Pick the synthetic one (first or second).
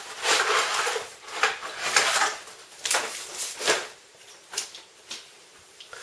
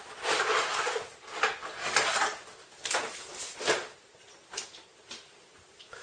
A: first